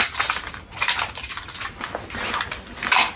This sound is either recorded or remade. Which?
recorded